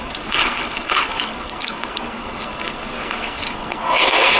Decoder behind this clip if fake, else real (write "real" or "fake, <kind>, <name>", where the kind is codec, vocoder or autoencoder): fake, codec, SNAC